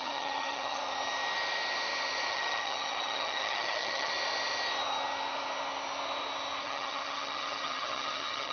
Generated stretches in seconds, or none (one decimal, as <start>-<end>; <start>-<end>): 0.0-0.8; 2.3-4.1; 6.6-8.5